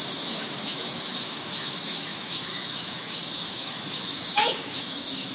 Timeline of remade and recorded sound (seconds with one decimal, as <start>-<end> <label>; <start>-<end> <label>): 0.0-5.3 remade